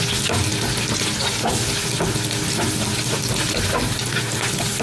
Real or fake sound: real